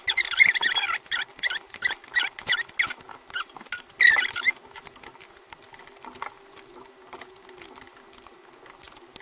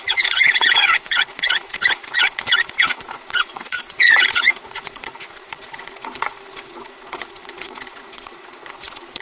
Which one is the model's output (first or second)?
second